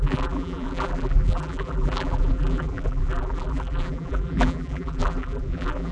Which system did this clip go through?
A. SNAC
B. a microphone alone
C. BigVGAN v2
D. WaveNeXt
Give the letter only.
C